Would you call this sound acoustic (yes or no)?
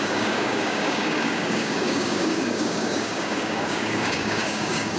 no